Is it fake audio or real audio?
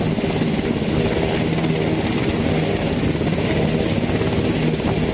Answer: real